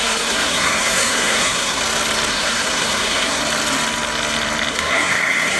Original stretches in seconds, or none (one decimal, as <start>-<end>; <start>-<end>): 1.8-2.3; 3.4-4.7